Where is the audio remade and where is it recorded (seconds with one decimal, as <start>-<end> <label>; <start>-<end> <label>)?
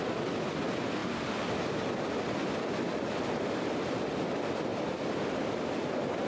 0.0-1.0 remade; 1.0-2.4 recorded; 2.4-6.3 remade